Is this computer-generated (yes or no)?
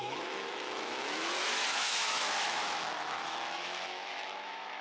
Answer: yes